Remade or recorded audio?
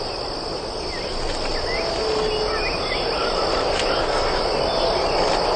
recorded